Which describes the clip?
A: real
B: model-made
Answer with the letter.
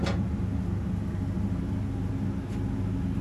A